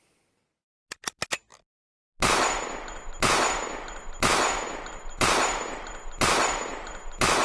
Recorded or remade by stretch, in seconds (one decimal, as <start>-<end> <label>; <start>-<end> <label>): 0.0-7.4 recorded